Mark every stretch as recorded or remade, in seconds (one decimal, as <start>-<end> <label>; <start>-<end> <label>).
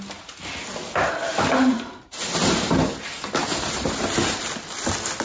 0.0-1.3 recorded; 1.3-4.4 remade; 4.4-5.2 recorded